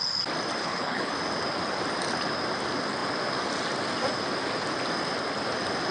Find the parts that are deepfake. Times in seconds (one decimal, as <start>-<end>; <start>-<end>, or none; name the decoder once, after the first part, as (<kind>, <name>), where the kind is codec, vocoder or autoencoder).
0.6-1.1 (codec, HILCodec)